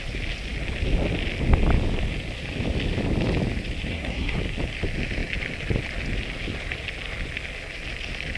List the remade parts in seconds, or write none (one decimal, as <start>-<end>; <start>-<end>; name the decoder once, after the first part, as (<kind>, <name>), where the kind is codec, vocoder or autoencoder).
3.9-4.4 (codec, SNAC)